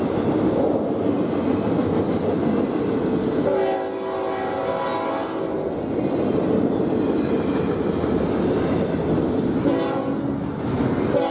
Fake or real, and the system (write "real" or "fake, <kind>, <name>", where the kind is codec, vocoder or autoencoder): real